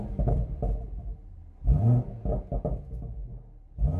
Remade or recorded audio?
recorded